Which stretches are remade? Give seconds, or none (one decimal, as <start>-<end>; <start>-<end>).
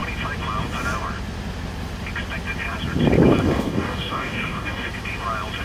3.4-4.9